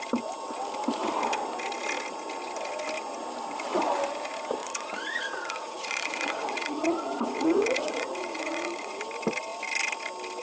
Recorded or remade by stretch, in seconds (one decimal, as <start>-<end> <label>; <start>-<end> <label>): 0.0-4.6 recorded; 4.6-9.0 remade; 9.0-10.4 recorded